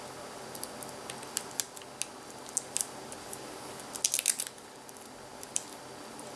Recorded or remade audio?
recorded